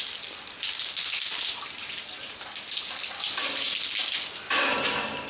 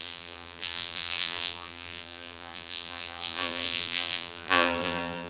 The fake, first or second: second